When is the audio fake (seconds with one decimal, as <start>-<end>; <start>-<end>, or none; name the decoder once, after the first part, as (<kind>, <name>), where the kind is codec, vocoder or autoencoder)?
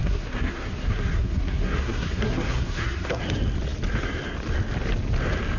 0.0-3.2 (codec, SNAC)